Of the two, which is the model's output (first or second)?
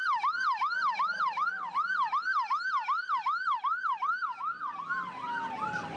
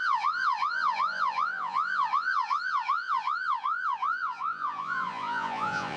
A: second